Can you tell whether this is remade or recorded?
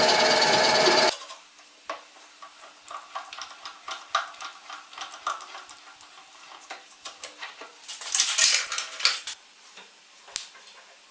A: recorded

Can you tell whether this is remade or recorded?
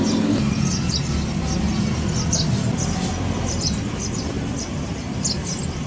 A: recorded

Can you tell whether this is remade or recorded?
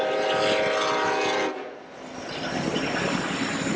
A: recorded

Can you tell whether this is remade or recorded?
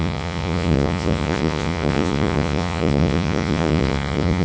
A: remade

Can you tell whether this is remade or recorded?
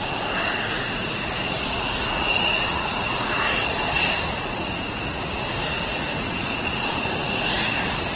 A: remade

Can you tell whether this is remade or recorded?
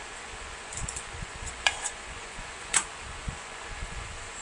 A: remade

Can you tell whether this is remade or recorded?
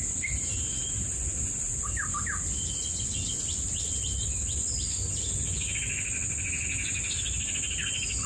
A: recorded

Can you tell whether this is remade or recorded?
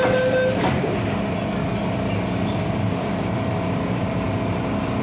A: recorded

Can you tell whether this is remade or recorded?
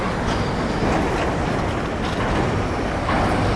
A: recorded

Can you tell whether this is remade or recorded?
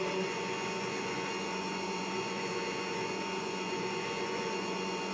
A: remade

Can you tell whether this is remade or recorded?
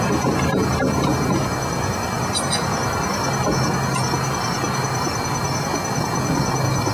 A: recorded